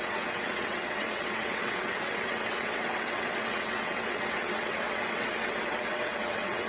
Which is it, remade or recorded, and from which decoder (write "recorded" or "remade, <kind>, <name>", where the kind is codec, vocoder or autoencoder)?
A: remade, vocoder, WaveNeXt